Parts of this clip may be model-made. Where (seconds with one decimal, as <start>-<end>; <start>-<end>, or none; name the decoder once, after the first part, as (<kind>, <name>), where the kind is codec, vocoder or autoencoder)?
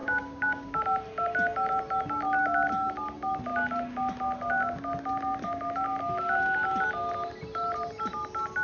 0.0-0.8 (codec, DAC)